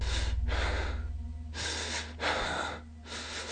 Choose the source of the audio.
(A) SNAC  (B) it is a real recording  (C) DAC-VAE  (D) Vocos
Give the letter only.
B